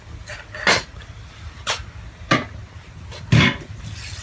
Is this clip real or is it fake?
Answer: real